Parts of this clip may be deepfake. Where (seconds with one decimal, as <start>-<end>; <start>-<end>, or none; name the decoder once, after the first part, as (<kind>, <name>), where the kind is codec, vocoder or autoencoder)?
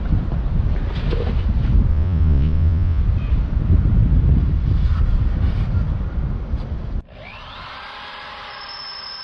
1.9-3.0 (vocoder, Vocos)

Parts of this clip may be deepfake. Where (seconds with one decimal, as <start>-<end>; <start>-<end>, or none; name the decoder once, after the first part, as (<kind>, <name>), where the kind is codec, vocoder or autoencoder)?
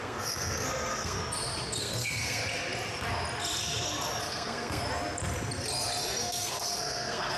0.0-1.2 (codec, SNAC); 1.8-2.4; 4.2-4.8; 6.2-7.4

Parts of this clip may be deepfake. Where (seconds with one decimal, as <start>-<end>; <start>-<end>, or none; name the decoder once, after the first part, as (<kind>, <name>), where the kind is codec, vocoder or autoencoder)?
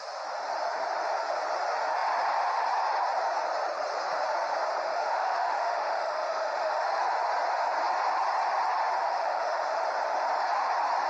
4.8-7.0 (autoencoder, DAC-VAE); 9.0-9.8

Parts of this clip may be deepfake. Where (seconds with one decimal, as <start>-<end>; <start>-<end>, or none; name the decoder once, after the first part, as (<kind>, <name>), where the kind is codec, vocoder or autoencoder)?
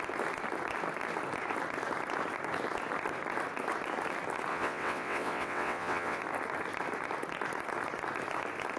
4.5-6.2 (vocoder, WaveNeXt)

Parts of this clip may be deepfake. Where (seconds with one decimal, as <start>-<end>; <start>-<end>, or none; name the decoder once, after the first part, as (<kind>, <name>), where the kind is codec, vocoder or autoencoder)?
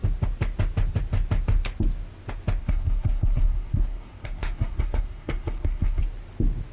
2.6-6.0 (codec, SNAC)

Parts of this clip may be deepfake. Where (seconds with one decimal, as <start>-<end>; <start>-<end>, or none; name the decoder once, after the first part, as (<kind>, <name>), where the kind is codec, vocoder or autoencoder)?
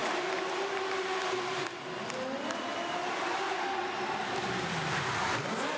none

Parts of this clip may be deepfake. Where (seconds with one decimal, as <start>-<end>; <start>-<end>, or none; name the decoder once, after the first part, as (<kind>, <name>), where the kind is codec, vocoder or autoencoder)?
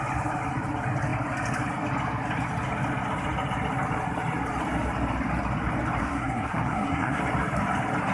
6.0-7.2 (codec, SNAC)